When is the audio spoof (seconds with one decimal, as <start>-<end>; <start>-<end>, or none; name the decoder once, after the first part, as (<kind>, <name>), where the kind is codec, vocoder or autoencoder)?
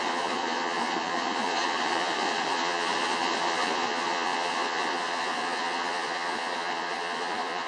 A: 0.0-7.7 (vocoder, Vocos)